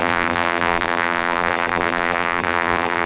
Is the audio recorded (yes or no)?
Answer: no